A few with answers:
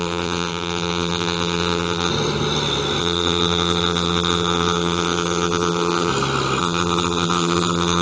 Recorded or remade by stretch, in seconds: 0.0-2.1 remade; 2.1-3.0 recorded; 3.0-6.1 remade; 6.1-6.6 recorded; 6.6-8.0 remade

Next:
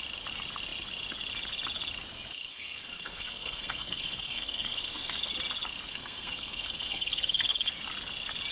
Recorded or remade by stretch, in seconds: 0.0-2.5 recorded; 2.5-5.3 remade; 5.3-5.9 recorded; 5.9-7.7 remade; 7.7-8.5 recorded

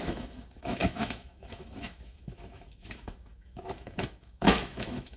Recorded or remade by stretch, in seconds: 0.0-5.2 remade

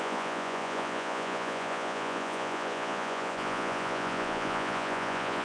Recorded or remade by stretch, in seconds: 0.0-5.4 remade

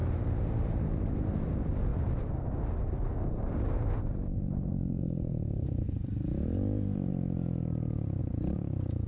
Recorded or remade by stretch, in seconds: 0.0-1.3 recorded; 1.3-1.9 remade; 1.9-5.0 recorded; 5.0-7.1 remade; 7.1-8.2 recorded; 8.2-9.1 remade

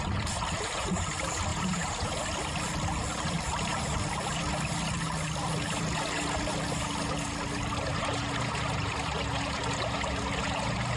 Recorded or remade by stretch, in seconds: 0.0-1.5 recorded; 1.5-2.1 remade; 2.1-11.0 recorded

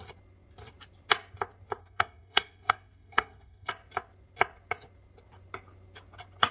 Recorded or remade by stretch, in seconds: 0.0-1.8 recorded; 1.8-3.7 remade; 3.7-6.5 recorded

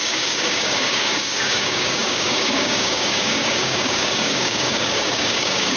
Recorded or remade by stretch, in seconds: 0.0-5.8 remade